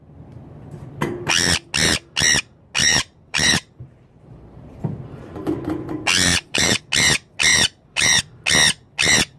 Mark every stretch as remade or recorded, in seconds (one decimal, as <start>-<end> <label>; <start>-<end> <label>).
0.0-2.8 recorded; 2.8-4.8 remade; 4.8-6.3 recorded; 6.3-6.8 remade; 6.8-7.5 recorded; 7.5-8.2 remade; 8.2-9.4 recorded